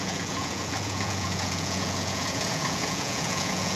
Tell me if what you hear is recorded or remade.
remade